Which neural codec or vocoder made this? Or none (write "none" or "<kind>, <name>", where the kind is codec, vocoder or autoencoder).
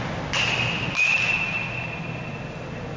none